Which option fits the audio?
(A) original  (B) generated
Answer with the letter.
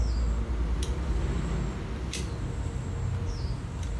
A